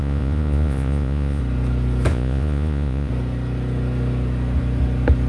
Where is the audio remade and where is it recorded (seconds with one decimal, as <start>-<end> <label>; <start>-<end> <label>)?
0.0-1.4 remade; 1.4-2.1 recorded; 2.1-3.1 remade; 3.1-5.3 recorded